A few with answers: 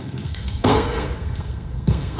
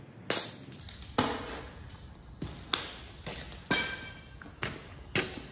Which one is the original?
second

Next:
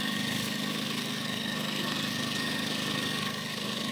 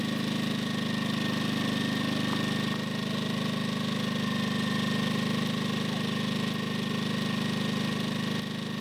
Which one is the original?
second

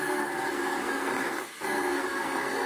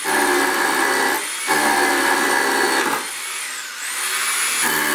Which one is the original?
second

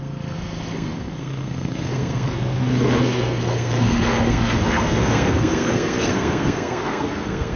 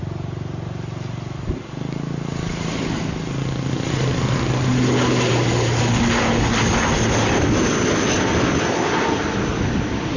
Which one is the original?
second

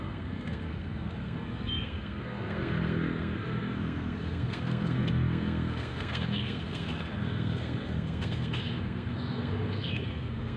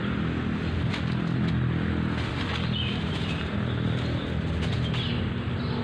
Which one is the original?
second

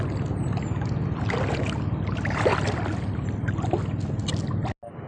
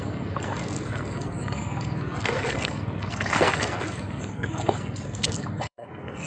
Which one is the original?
first